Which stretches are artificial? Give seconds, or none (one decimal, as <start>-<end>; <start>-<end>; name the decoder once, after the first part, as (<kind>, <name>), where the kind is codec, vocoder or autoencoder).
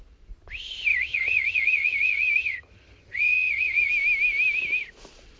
0.9-3.9 (vocoder, HiFi-GAN)